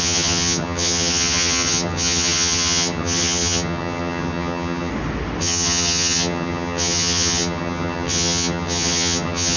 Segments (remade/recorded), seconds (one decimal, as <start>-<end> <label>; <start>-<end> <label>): 0.0-4.9 remade; 4.9-5.4 recorded; 5.4-9.6 remade